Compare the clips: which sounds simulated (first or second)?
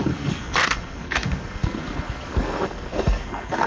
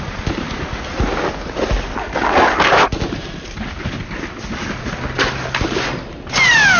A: first